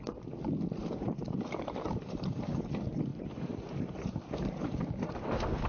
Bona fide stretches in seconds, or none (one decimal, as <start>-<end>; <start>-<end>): 0.0-0.8; 2.6-3.1; 4.2-5.7